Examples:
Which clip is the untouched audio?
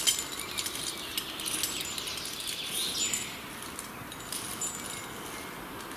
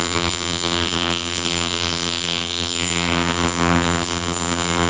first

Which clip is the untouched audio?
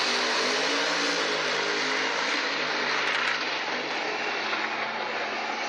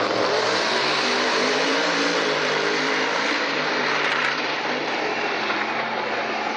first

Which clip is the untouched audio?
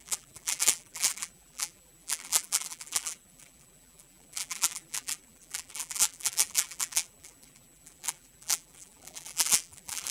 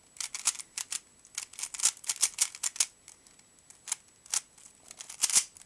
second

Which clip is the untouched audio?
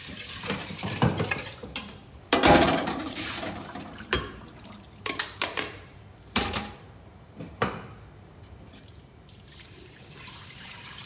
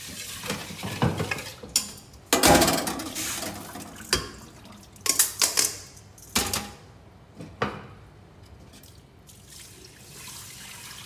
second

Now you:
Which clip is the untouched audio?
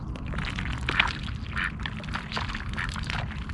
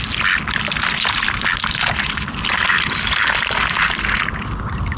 first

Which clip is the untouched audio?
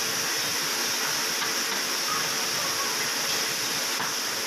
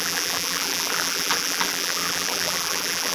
first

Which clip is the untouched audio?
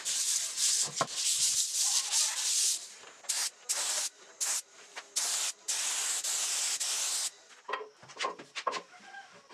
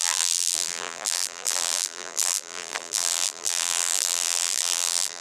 first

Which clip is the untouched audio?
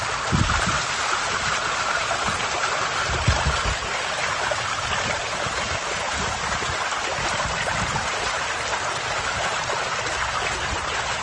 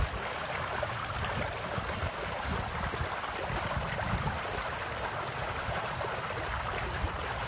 first